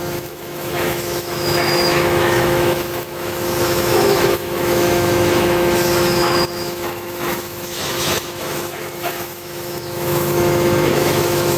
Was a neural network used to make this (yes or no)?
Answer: yes